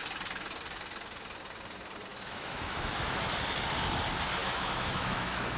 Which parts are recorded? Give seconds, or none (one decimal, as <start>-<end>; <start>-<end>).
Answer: 0.0-2.1; 3.3-4.4